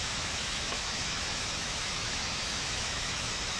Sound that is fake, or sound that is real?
fake